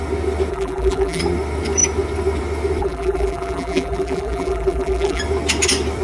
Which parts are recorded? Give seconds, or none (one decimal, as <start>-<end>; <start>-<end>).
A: 0.0-0.5; 1.2-2.8; 5.2-6.0